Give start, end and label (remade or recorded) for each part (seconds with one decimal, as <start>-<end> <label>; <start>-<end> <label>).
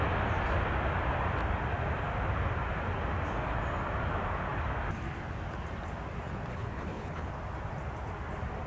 0.0-6.5 recorded; 6.5-7.3 remade; 7.3-8.7 recorded